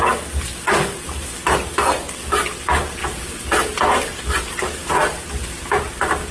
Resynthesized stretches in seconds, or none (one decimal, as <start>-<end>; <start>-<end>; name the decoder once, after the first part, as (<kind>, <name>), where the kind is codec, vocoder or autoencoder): none